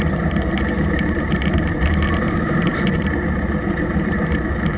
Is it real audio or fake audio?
fake